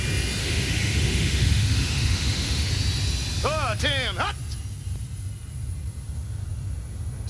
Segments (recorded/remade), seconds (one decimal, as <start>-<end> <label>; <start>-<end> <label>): 0.0-0.4 recorded; 0.4-2.7 remade; 2.7-7.3 recorded